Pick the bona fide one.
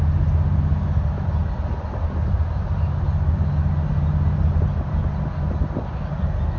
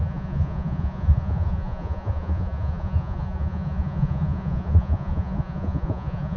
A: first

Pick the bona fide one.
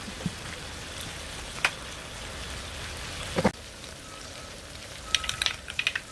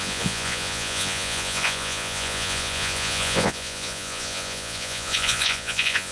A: first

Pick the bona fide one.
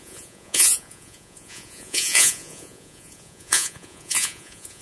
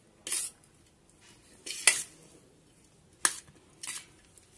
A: second